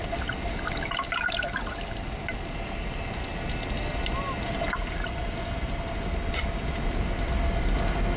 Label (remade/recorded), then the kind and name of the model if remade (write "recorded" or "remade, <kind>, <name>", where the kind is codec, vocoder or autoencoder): recorded